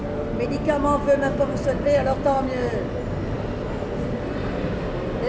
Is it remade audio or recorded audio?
recorded